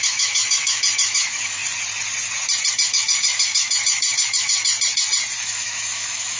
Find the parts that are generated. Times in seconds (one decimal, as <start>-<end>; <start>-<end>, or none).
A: 0.0-1.6; 2.7-4.7; 5.4-6.4